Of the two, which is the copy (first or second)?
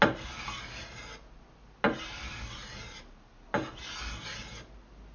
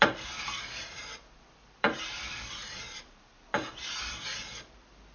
second